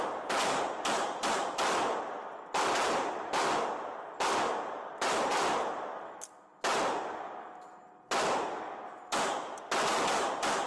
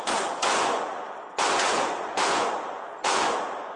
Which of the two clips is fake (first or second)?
second